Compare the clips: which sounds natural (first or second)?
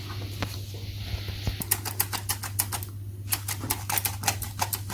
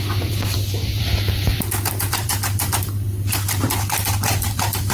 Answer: first